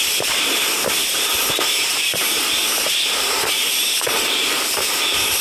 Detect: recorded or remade remade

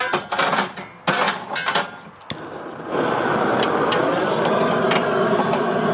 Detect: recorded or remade recorded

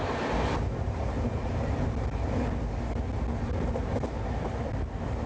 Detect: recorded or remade recorded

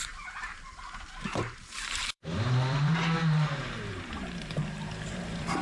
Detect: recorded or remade remade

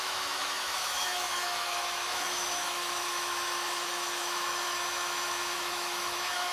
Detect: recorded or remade remade